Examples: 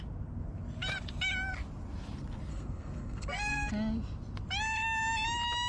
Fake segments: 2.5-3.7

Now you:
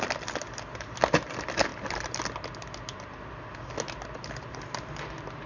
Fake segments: none

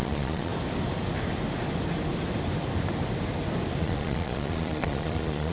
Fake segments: 0.0-0.5; 3.8-5.5

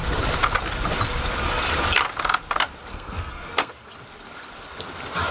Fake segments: 2.9-3.7

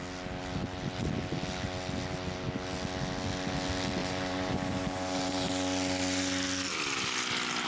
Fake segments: 4.0-5.5

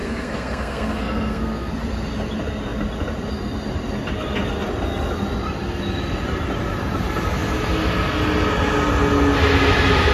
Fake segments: 0.0-1.7